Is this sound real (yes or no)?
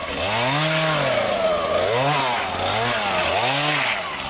yes